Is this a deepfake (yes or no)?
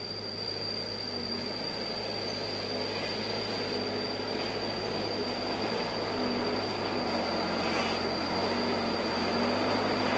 no